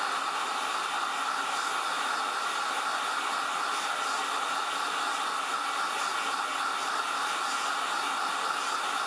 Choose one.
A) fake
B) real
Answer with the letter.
B